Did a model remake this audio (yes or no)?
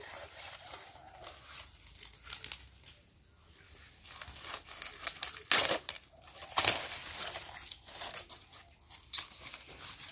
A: no